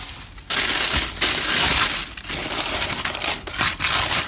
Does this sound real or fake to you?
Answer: real